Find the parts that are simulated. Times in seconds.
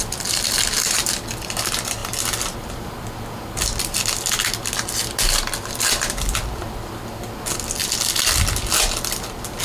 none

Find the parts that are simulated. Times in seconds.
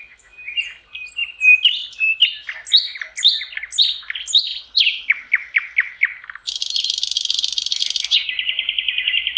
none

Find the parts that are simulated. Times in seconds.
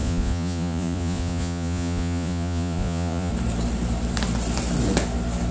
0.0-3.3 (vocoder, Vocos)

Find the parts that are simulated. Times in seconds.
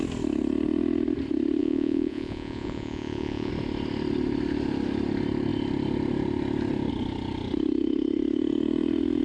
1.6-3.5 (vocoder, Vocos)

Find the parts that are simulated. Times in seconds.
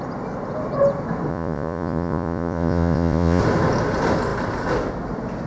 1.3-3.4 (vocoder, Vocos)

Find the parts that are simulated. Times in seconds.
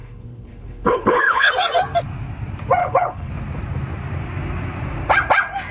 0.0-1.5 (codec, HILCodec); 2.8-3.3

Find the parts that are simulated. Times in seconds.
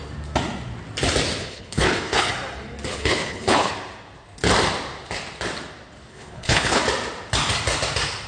1.4-2.3 (codec, HILCodec); 2.9-3.7; 6.1-6.8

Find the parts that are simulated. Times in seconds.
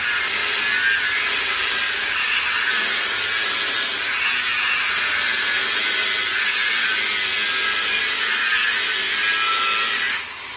none